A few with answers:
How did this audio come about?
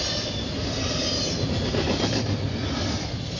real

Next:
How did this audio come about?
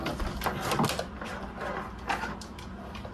real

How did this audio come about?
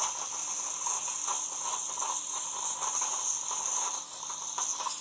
real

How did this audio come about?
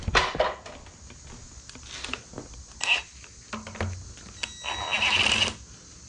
real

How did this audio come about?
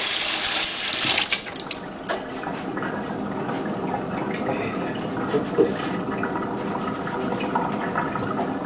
real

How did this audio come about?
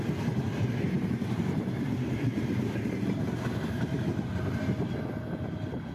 fake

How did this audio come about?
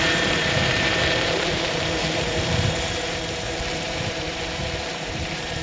fake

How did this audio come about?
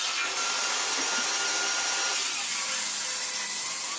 real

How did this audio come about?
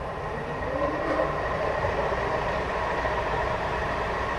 fake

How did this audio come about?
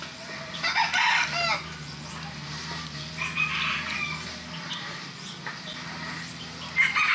real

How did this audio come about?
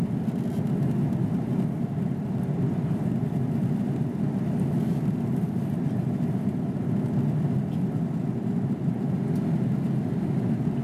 real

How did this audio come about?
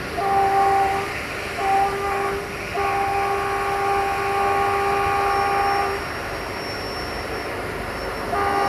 real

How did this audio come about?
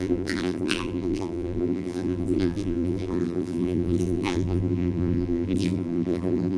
fake